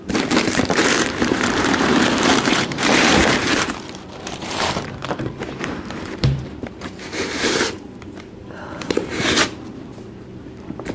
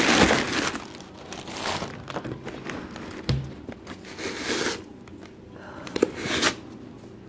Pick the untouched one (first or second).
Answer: second